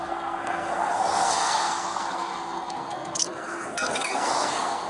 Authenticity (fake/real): fake